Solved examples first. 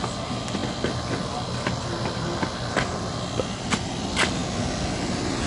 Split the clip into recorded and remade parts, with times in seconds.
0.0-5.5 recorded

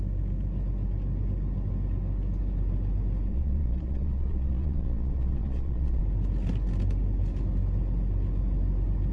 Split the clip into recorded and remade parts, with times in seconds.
0.0-3.3 recorded; 3.3-6.0 remade; 6.0-9.1 recorded

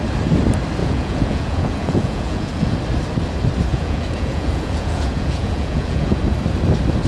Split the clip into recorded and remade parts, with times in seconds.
0.0-0.8 recorded; 0.8-2.8 remade; 2.8-3.7 recorded; 3.7-6.2 remade; 6.2-7.1 recorded

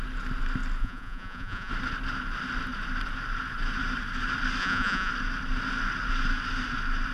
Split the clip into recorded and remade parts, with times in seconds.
0.0-0.8 recorded; 0.8-1.7 remade; 1.7-4.6 recorded; 4.6-5.1 remade; 5.1-7.1 recorded

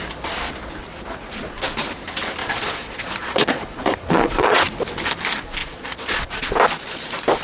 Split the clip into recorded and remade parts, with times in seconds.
0.0-2.4 recorded; 2.4-4.6 remade; 4.6-5.6 recorded; 5.6-6.5 remade; 6.5-7.4 recorded